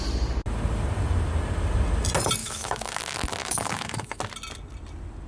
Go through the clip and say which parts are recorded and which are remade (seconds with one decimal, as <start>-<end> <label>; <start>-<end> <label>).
0.0-2.4 recorded; 2.4-3.0 remade; 3.0-3.4 recorded; 3.4-4.2 remade; 4.2-5.3 recorded